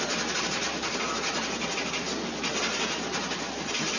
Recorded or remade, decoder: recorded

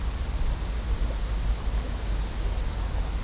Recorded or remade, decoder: recorded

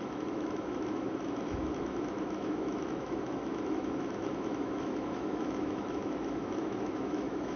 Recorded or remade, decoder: remade, autoencoder, DAC-VAE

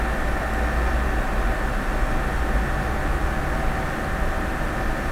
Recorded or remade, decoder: recorded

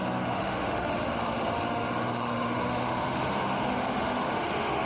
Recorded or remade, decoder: remade, autoencoder, DAC-VAE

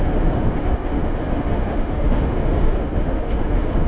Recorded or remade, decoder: remade, autoencoder, DAC-VAE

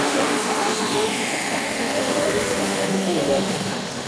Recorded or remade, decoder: remade, autoencoder, DAC-VAE